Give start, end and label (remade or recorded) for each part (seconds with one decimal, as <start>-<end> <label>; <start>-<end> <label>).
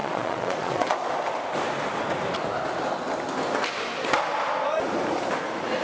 0.0-1.1 remade; 1.1-5.8 recorded